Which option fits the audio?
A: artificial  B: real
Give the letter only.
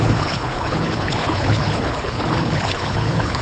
A